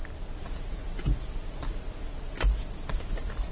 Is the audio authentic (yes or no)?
yes